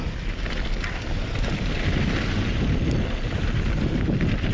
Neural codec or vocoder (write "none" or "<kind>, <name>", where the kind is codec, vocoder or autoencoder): none